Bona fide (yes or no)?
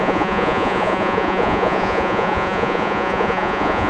no